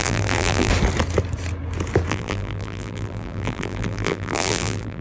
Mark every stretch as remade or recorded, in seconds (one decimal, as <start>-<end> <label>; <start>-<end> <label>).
0.0-0.7 remade; 0.7-2.1 recorded; 2.1-5.0 remade